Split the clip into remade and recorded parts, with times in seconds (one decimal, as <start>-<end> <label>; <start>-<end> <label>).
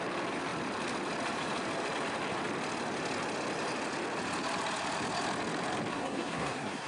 0.0-5.9 recorded; 5.9-6.9 remade